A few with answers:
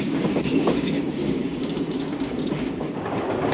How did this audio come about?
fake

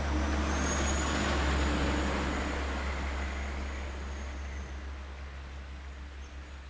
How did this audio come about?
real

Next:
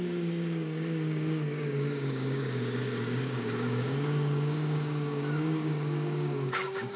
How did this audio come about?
fake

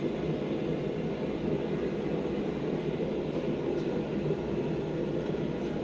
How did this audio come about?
real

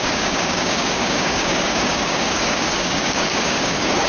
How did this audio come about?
fake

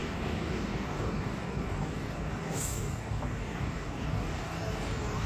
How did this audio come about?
fake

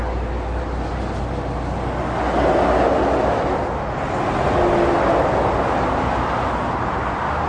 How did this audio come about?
real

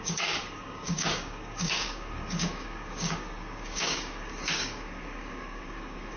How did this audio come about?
fake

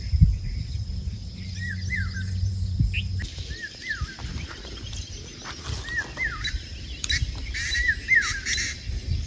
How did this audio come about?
real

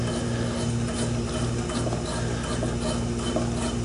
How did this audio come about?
real